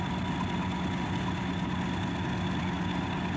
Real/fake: real